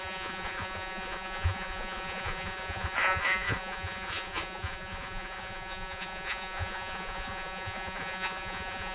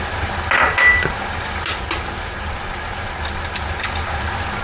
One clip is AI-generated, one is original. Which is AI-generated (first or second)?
first